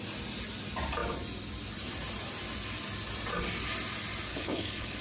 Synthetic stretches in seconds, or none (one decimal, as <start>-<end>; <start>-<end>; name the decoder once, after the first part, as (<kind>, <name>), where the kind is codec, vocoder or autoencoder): 4.3-5.0 (codec, HILCodec)